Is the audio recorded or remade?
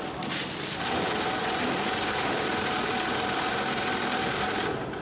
recorded